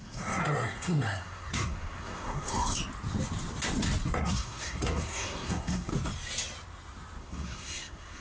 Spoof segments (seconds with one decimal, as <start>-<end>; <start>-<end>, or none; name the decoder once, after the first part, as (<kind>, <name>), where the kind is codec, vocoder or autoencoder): 0.0-2.8 (codec, SNAC); 4.0-5.9; 7.2-8.2